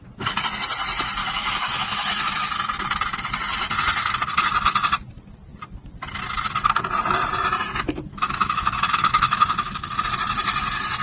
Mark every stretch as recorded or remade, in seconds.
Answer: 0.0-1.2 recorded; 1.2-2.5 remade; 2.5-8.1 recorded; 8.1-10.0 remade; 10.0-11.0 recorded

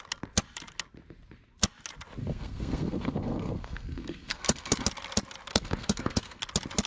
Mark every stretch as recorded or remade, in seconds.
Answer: 0.0-2.2 recorded; 2.2-4.8 remade; 4.8-5.5 recorded; 5.5-6.4 remade; 6.4-6.9 recorded

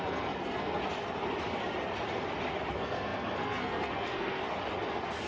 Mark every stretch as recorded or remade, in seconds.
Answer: 0.0-0.8 remade; 0.8-2.7 recorded; 2.7-4.4 remade; 4.4-5.3 recorded

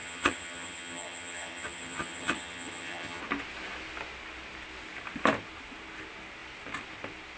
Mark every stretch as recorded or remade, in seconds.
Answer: 0.0-3.2 remade; 3.2-7.4 recorded